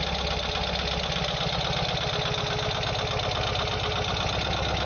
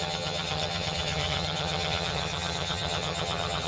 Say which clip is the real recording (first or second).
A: first